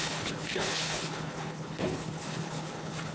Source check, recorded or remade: remade